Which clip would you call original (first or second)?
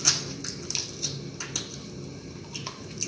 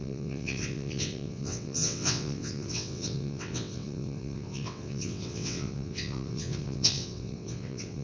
first